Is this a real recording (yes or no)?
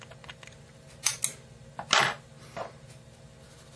yes